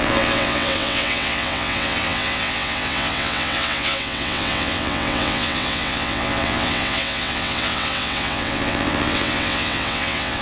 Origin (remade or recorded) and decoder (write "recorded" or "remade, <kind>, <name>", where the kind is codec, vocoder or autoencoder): remade, vocoder, WaveNeXt